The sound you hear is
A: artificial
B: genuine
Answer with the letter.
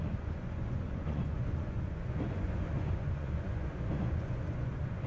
A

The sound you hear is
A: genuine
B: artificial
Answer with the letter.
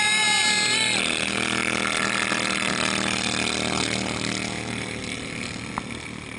A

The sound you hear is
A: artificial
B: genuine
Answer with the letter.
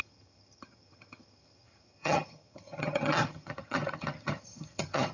A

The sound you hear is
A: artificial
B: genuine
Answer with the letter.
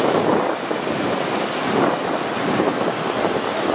B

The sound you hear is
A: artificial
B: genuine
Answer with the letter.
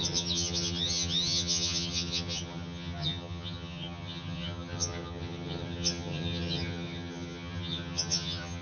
A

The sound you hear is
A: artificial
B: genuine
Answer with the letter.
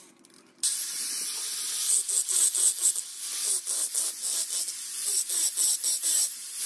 B